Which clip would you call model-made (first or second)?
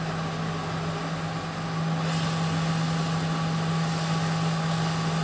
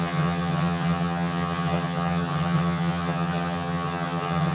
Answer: second